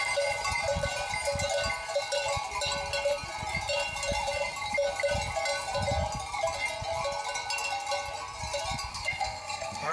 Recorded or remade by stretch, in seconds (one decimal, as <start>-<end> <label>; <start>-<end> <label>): 0.0-8.9 recorded; 8.9-9.9 remade